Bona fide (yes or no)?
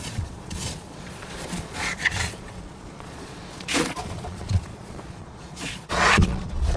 no